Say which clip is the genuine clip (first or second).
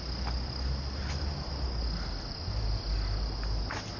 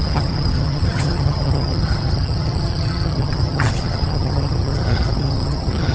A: first